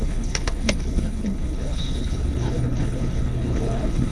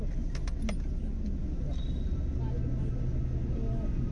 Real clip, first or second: second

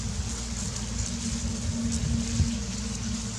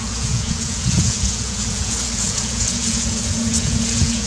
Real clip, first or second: first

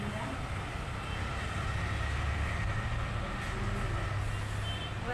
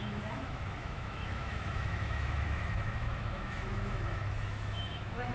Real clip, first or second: first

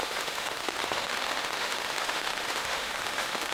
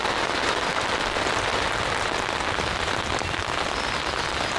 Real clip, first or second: second